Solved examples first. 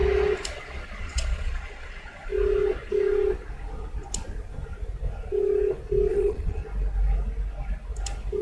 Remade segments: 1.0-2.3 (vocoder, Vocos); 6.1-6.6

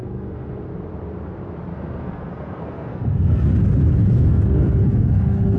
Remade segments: 0.0-0.7 (codec, SNAC); 1.7-3.5; 4.0-5.6